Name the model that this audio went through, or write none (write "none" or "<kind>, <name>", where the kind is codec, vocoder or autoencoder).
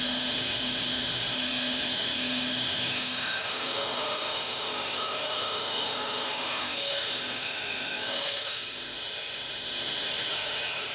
autoencoder, DAC-VAE